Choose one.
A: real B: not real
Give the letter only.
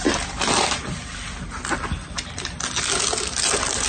A